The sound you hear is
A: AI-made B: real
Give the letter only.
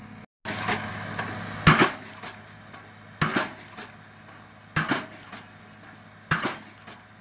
B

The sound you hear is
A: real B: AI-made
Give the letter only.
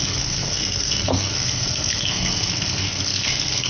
B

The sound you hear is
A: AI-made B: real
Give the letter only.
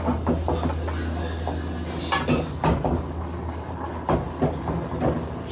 B